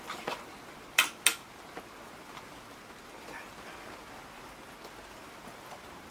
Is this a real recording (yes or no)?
yes